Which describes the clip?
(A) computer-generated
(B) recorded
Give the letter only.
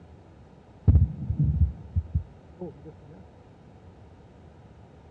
B